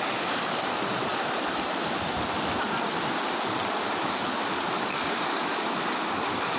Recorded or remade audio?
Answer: recorded